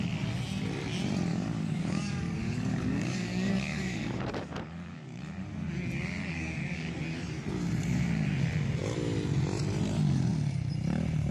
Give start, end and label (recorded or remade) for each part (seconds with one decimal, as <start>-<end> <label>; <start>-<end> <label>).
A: 0.0-1.3 recorded; 1.3-5.2 remade; 5.2-6.2 recorded; 6.2-6.9 remade; 6.9-11.3 recorded